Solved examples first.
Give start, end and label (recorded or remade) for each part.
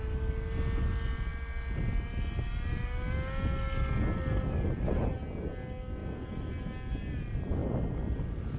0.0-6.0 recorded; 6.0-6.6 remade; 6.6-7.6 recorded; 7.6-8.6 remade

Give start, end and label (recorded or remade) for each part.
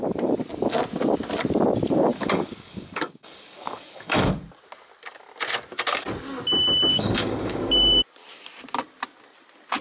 0.0-2.1 recorded; 2.1-4.4 remade; 4.4-6.9 recorded; 6.9-7.7 remade; 7.7-9.8 recorded